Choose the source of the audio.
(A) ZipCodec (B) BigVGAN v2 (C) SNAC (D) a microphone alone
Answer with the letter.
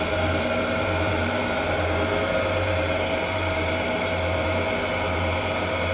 B